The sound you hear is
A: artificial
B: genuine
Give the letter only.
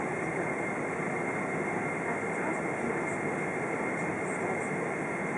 B